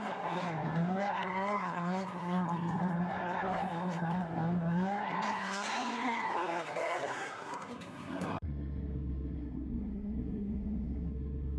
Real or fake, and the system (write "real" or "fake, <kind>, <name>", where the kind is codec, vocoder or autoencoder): fake, codec, SNAC